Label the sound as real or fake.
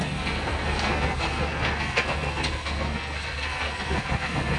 fake